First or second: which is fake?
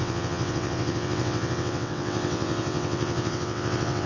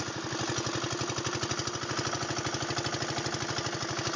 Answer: first